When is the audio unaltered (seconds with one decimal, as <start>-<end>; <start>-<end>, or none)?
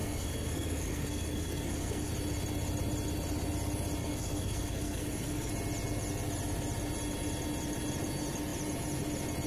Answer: 2.1-4.0; 5.5-9.5